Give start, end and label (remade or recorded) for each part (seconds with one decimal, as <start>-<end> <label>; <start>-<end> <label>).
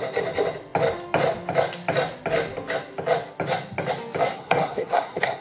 0.0-4.3 recorded; 4.3-5.4 remade